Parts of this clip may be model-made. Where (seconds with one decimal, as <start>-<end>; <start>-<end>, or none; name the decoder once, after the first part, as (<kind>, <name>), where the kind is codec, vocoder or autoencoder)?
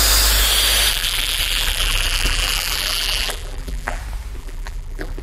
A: 0.9-4.0 (vocoder, BigVGAN v2); 4.4-5.2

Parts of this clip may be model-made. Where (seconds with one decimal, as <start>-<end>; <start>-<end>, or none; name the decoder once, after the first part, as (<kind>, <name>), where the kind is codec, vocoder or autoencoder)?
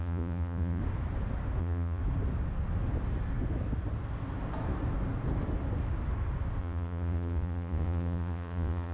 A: 0.0-0.8 (vocoder, Vocos); 1.6-2.0; 6.6-8.9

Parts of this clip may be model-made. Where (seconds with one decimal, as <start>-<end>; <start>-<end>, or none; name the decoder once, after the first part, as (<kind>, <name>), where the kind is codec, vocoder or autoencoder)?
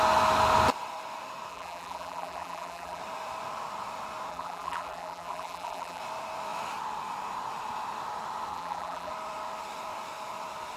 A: 1.5-3.0 (vocoder, BigVGAN v2); 4.3-6.0; 8.5-9.1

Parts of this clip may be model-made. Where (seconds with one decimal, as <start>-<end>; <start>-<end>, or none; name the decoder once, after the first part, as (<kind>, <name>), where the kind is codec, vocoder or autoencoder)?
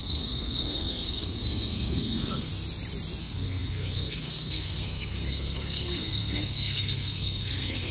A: 0.0-2.5 (codec, SNAC); 3.2-7.9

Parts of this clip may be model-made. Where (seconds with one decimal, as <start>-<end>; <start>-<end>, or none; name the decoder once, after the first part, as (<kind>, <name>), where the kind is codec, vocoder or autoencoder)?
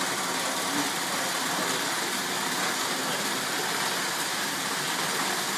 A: 4.3-5.0 (vocoder, BigVGAN v2)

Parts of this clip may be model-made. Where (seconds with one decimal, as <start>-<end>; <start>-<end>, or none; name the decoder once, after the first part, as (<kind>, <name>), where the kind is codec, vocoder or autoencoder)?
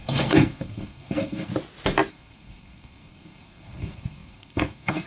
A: 0.0-1.5 (codec, SNAC); 2.1-5.1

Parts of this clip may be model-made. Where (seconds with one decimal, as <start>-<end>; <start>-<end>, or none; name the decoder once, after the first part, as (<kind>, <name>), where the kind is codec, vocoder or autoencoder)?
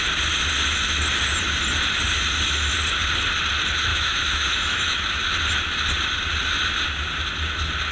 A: 3.9-5.0 (autoencoder, DAC-VAE)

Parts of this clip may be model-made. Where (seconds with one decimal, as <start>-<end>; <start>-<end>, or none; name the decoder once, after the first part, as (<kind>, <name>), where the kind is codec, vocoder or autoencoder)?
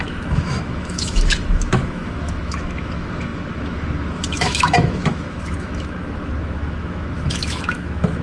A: 0.0-8.2 (autoencoder, DAC-VAE)